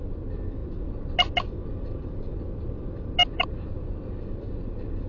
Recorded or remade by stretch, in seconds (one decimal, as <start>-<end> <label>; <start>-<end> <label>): 0.0-5.1 recorded